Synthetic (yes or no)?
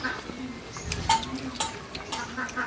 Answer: no